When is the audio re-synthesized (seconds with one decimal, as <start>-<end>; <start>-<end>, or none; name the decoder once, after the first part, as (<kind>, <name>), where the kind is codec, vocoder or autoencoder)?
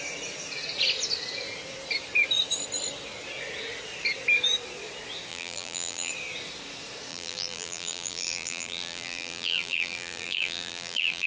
5.3-6.1 (vocoder, BigVGAN v2); 7.1-11.3